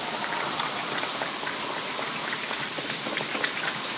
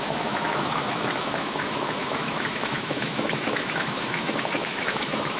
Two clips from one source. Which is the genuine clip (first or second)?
first